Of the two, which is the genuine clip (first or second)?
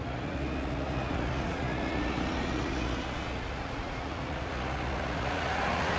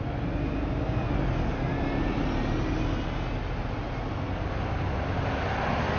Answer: second